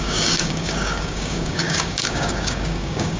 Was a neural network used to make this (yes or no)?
yes